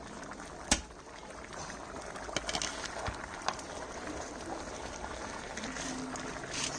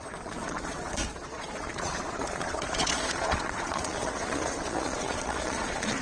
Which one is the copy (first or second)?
second